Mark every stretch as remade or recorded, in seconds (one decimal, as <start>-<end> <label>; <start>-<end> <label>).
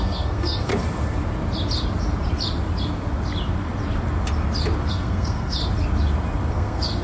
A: 0.0-0.7 remade; 0.7-4.9 recorded; 4.9-5.6 remade; 5.6-6.5 recorded; 6.5-7.0 remade